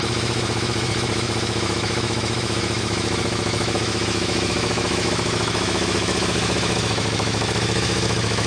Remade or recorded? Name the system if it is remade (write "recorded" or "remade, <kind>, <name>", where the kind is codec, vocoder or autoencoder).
remade, autoencoder, DAC-VAE